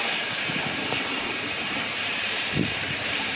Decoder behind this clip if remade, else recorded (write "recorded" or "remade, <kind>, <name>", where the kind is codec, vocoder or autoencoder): remade, vocoder, BigVGAN v2